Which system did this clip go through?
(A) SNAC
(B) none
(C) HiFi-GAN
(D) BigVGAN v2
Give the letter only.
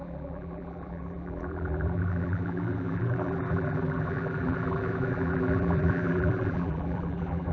D